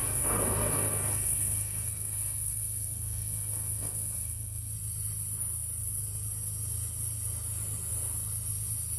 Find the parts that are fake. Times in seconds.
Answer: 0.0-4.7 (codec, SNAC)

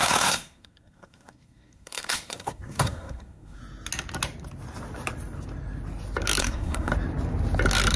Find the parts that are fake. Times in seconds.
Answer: 0.0-3.6 (codec, SNAC); 6.4-6.9

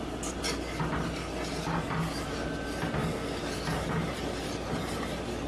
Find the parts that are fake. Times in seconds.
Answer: none

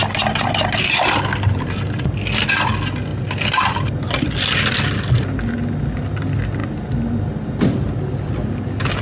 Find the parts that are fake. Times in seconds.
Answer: none

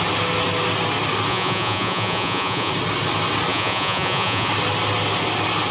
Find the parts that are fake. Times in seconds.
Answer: 1.3-2.7 (vocoder, Vocos); 3.5-4.5

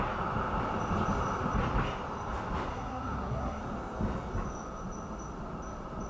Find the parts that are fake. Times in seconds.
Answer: 2.7-3.6 (codec, SNAC)

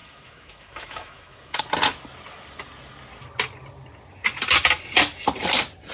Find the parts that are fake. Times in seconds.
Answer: 0.0-1.6 (autoencoder, DAC-VAE)

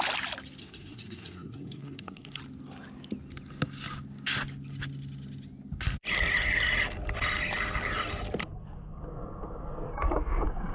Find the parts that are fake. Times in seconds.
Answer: 0.6-2.4 (codec, SNAC)